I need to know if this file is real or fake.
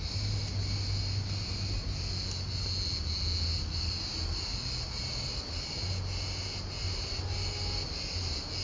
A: real